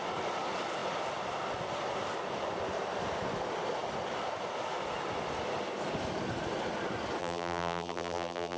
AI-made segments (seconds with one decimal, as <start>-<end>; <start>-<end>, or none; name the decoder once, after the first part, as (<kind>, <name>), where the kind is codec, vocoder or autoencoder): 7.2-8.6 (vocoder, BigVGAN v2)